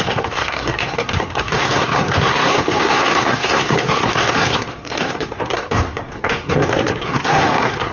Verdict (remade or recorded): remade